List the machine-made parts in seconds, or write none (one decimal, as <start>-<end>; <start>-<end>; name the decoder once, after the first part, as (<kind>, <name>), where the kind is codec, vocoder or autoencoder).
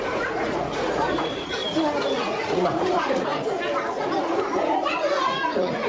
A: 0.0-1.6 (vocoder, Vocos); 2.2-3.3; 4.2-5.9